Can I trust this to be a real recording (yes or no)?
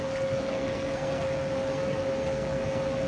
no